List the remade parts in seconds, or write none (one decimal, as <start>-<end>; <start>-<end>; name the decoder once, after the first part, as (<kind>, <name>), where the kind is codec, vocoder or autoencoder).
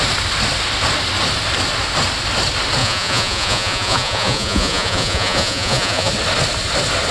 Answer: 2.8-6.1 (vocoder, Vocos)